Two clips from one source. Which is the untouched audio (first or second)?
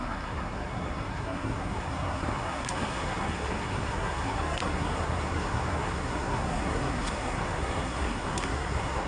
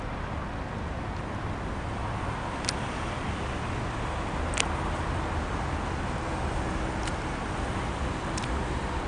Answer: second